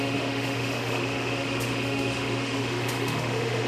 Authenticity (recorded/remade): remade